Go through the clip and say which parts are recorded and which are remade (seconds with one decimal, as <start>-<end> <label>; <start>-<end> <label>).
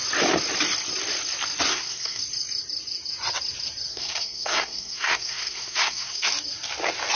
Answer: 0.0-1.7 recorded; 1.7-2.2 remade; 2.2-3.9 recorded; 3.9-6.3 remade; 6.3-7.2 recorded